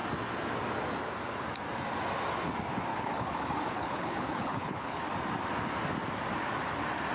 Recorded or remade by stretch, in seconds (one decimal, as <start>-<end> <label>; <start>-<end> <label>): 0.0-2.9 recorded; 2.9-5.0 remade; 5.0-7.1 recorded

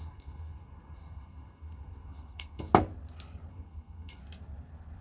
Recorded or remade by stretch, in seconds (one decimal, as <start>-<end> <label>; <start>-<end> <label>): 0.0-2.7 remade; 2.7-3.5 recorded; 3.5-4.2 remade; 4.2-5.0 recorded

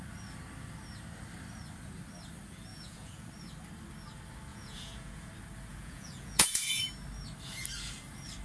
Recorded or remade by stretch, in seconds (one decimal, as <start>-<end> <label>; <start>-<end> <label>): 0.0-2.7 recorded; 2.7-3.3 remade; 3.3-4.5 recorded; 4.5-5.3 remade; 5.3-5.7 recorded; 5.7-6.8 remade; 6.8-8.4 recorded

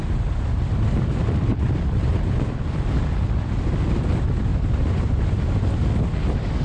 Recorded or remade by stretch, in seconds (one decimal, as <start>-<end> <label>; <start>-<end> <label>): 0.0-1.5 recorded; 1.5-3.4 remade; 3.4-4.5 recorded; 4.5-5.6 remade; 5.6-6.6 recorded

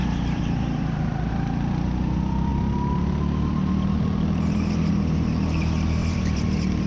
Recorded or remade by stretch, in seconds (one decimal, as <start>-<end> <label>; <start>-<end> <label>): 0.0-1.3 remade; 1.3-6.0 recorded; 6.0-6.9 remade

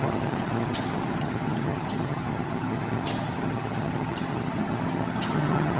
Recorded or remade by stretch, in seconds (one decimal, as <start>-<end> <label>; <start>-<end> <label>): 0.0-5.8 remade